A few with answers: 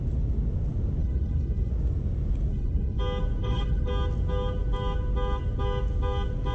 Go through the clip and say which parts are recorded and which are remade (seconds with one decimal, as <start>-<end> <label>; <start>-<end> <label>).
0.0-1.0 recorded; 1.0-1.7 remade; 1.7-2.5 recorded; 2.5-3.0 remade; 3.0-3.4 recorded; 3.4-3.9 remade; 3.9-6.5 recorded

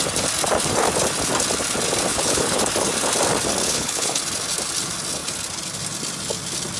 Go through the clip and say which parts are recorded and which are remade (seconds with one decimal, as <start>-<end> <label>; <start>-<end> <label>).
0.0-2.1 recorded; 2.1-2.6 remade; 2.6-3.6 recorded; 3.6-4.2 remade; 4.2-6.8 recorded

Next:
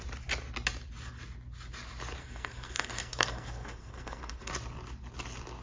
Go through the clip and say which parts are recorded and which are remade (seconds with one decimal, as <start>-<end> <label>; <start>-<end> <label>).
0.0-2.2 recorded; 2.2-4.5 remade; 4.5-5.6 recorded

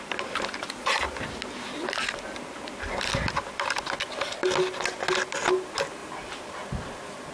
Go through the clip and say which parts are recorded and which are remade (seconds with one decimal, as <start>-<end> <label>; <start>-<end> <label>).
0.0-7.3 recorded

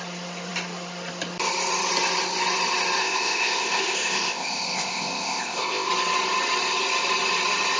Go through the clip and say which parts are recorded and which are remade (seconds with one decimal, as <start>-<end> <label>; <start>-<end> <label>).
0.0-3.0 recorded; 3.0-5.9 remade; 5.9-7.8 recorded

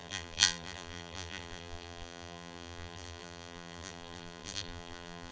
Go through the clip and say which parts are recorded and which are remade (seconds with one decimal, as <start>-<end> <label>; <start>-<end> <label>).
0.0-5.3 remade

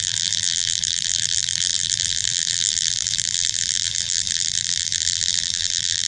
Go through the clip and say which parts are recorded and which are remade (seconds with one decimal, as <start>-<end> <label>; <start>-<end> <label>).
0.0-6.1 remade

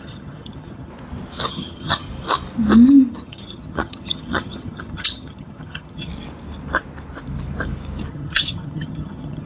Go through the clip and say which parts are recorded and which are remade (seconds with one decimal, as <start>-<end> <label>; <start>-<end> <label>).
0.0-0.9 remade; 0.9-1.5 recorded; 1.5-2.1 remade; 2.1-3.1 recorded; 3.1-6.1 remade; 6.1-8.1 recorded; 8.1-9.5 remade